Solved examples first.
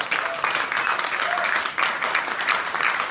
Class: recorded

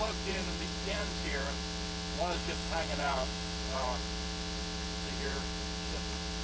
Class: remade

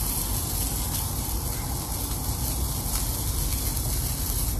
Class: recorded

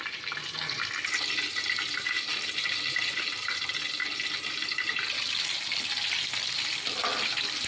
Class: recorded